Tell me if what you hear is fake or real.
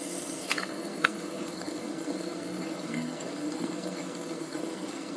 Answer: fake